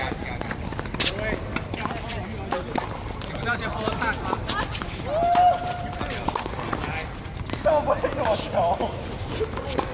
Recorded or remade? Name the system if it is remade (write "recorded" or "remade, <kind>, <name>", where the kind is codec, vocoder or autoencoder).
recorded